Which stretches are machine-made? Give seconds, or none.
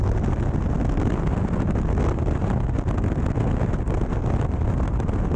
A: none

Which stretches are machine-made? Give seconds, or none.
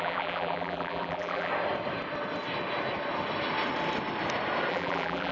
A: 0.0-1.5 (vocoder, BigVGAN v2); 4.7-5.3